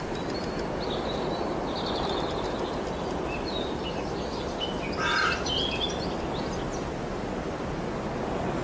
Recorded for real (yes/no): yes